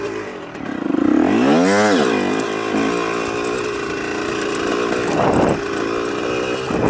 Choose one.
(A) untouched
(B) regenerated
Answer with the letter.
A